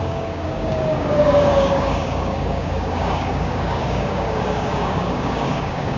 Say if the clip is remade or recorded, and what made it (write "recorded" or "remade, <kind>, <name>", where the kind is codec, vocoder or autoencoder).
remade, codec, DAC